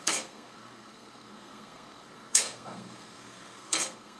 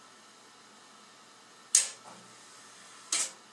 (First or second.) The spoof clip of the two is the first